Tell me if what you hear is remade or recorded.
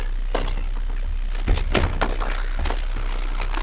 recorded